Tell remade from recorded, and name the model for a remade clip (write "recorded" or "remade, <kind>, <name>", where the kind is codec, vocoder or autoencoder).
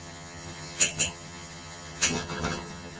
remade, vocoder, HiFi-GAN